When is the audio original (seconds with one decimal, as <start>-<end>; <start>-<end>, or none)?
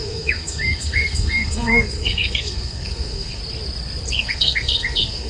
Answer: 3.4-4.1